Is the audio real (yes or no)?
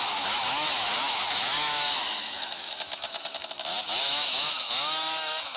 no